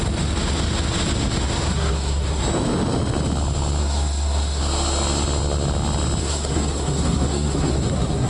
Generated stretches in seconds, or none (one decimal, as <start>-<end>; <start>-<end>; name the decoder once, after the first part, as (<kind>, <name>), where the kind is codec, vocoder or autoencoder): 1.7-2.4 (codec, SNAC); 3.8-4.6; 6.2-8.3